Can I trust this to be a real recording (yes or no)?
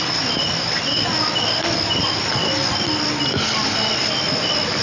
yes